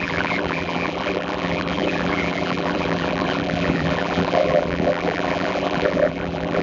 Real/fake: fake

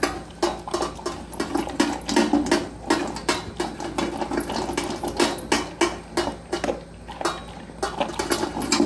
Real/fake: real